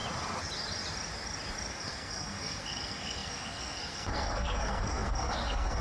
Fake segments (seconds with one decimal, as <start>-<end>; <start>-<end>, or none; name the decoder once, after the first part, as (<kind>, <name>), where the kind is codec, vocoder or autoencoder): 1.7-5.8 (codec, SNAC)